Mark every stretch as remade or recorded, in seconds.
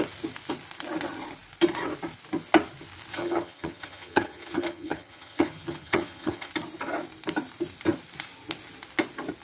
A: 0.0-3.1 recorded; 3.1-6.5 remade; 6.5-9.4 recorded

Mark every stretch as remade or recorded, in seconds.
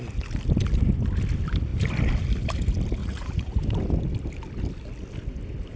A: 0.0-3.0 recorded; 3.0-3.6 remade; 3.6-5.8 recorded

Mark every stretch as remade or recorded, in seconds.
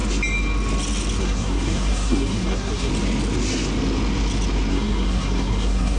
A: 0.0-1.2 recorded; 1.2-2.9 remade; 2.9-4.7 recorded; 4.7-6.0 remade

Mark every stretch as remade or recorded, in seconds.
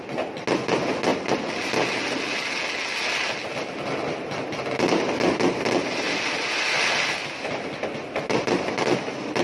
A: 0.0-9.4 recorded